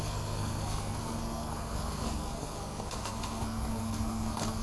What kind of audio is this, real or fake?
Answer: fake